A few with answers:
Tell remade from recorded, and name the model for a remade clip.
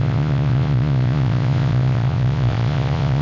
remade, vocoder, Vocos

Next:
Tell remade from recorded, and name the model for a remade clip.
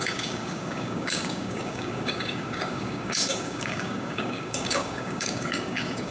remade, codec, DAC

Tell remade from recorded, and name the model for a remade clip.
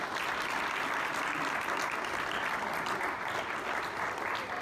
recorded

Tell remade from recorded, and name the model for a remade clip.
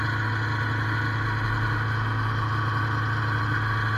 recorded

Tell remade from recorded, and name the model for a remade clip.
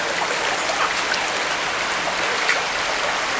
recorded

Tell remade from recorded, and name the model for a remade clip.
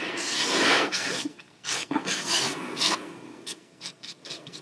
remade, codec, SNAC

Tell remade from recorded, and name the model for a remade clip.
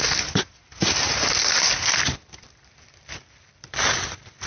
recorded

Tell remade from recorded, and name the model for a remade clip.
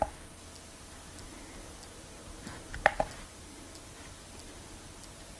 recorded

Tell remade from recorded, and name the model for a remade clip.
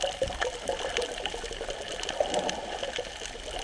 recorded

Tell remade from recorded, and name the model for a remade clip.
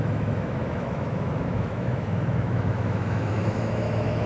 remade, autoencoder, DAC-VAE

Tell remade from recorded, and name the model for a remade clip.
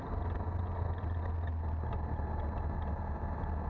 recorded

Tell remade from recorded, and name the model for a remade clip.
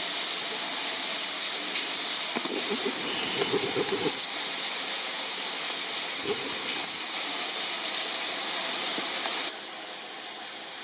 recorded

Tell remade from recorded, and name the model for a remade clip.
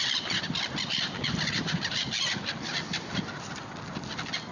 recorded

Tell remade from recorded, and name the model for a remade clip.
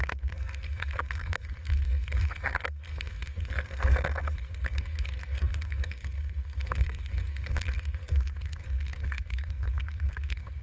remade, codec, SNAC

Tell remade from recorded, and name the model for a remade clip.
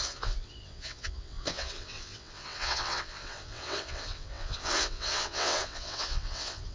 remade, vocoder, WaveNeXt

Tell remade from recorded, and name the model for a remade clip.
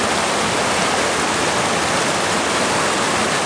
recorded